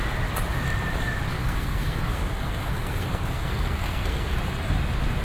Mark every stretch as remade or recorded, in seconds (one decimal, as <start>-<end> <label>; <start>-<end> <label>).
0.0-1.3 recorded; 1.3-4.4 remade; 4.4-5.2 recorded